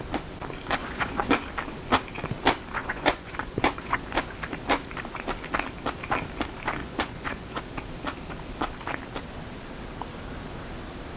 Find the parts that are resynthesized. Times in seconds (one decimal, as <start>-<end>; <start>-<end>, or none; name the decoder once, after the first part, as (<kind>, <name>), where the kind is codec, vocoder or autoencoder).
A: 0.8-1.3 (vocoder, Vocos); 2.8-4.0; 6.8-7.6